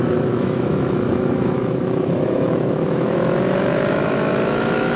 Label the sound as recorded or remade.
remade